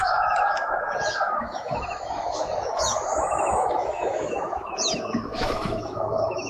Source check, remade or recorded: remade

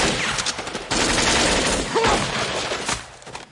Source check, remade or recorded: recorded